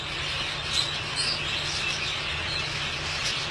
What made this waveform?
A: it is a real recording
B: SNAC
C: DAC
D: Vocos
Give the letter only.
A